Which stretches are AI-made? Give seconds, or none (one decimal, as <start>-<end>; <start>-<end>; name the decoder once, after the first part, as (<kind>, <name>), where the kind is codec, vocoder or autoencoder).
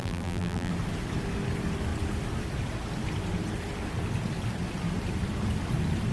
0.0-0.7 (vocoder, BigVGAN v2)